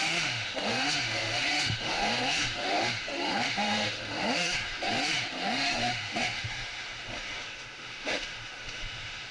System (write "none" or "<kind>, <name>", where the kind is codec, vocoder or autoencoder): autoencoder, DAC-VAE